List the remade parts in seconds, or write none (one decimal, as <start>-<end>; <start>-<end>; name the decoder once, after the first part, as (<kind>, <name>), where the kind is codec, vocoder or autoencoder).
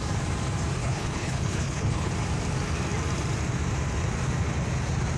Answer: 0.8-2.1 (codec, HILCodec)